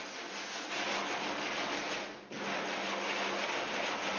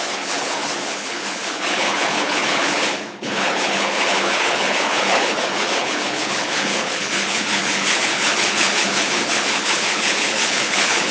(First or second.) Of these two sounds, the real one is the first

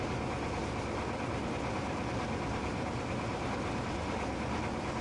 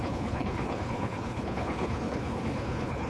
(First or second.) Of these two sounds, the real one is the first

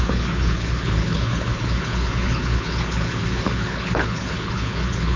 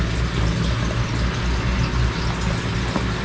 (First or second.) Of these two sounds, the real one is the second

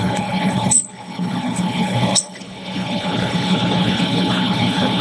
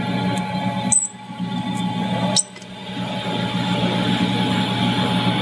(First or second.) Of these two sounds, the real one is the second